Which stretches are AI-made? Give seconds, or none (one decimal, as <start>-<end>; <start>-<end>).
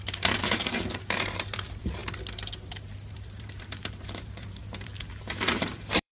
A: 0.0-2.0; 3.1-4.9; 5.5-6.1